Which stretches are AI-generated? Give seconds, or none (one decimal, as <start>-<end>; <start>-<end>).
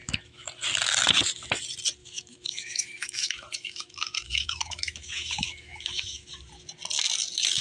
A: 0.0-0.5; 2.0-6.3